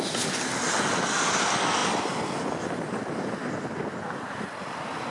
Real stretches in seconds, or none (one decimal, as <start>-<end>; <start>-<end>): 0.0-5.1